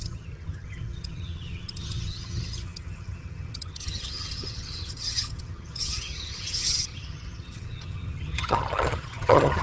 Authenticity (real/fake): fake